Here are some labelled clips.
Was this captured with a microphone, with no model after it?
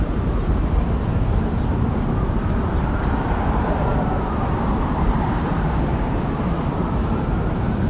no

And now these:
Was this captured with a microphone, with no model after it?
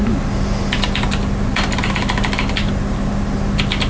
yes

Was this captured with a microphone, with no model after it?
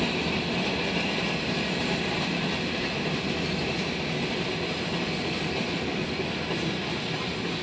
yes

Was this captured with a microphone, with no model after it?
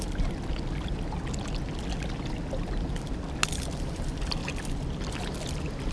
yes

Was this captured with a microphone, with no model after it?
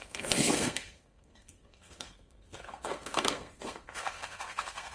no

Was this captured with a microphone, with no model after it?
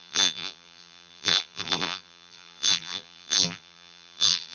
no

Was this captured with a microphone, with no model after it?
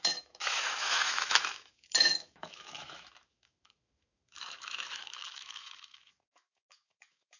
no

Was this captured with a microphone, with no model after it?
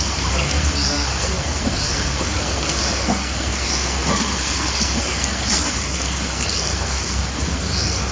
no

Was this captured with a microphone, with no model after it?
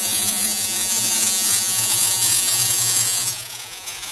no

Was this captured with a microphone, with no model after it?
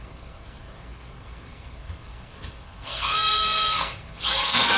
no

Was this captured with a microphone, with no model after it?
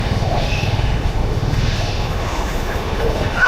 no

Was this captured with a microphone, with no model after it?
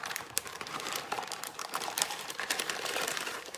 no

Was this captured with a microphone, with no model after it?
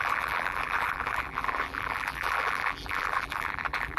no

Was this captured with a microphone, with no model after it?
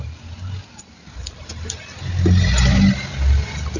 yes